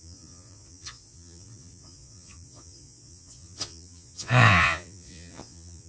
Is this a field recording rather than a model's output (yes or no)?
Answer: no